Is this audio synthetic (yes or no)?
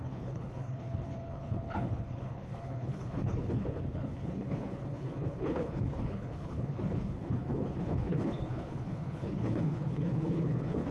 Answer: yes